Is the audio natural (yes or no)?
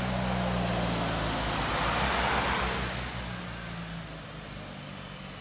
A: yes